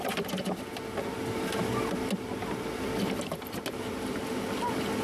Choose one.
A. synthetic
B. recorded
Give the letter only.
B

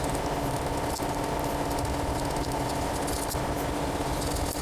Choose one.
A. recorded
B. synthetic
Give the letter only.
A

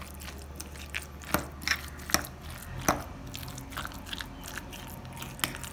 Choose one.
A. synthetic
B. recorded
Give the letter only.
B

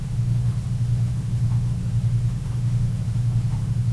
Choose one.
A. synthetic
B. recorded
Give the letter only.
A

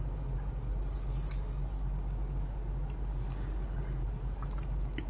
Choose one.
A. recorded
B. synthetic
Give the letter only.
A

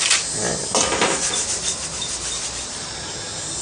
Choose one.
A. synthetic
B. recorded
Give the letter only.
B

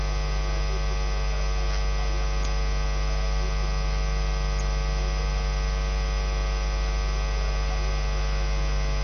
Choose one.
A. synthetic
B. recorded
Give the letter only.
B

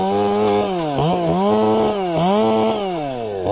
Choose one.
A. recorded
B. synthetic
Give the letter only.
A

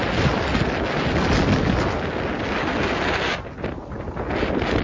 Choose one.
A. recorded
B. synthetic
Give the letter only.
A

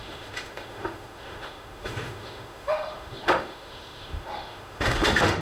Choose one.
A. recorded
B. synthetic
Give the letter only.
B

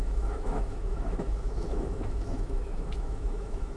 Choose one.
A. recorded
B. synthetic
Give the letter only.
B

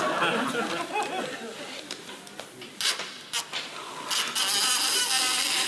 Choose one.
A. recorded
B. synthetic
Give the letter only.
A